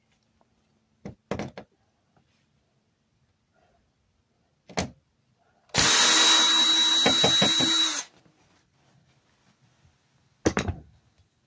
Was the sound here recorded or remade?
recorded